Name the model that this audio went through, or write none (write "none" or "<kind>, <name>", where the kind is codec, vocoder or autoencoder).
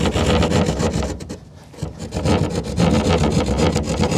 none